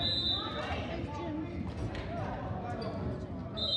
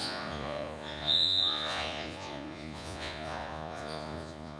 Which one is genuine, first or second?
first